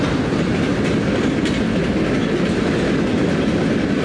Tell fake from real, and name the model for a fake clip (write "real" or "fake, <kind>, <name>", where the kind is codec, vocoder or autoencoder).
real